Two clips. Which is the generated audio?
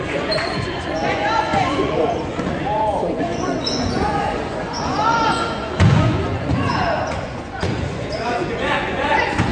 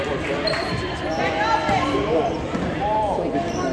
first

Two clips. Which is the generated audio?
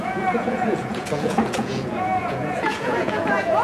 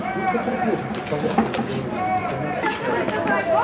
first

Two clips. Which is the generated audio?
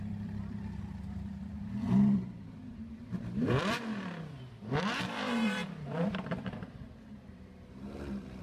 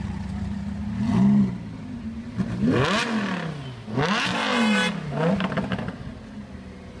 first